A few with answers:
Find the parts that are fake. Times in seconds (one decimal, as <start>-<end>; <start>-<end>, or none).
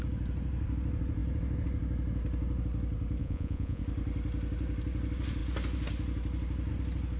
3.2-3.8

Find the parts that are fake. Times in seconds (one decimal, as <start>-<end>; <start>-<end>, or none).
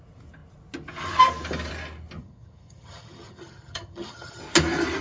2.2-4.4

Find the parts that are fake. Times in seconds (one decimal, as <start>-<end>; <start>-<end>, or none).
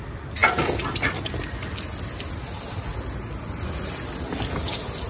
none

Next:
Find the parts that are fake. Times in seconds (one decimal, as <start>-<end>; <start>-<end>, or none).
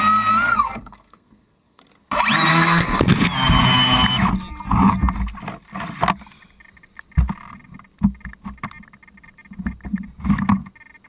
0.5-1.8; 2.5-3.0